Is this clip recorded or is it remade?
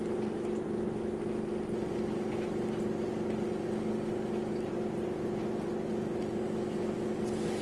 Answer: recorded